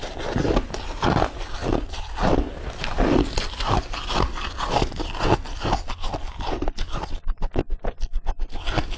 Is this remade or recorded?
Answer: recorded